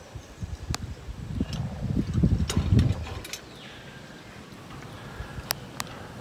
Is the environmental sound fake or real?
real